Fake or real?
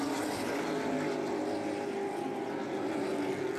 real